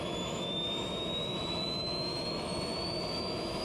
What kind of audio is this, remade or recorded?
remade